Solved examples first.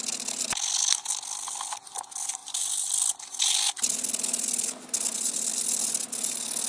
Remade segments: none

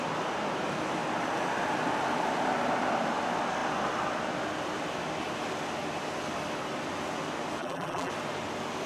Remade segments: 7.6-8.1 (vocoder, BigVGAN v2)